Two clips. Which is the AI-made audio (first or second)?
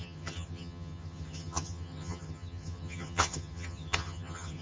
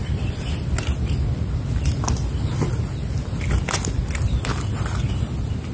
first